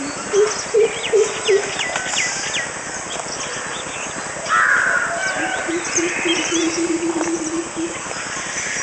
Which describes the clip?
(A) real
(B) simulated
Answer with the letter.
A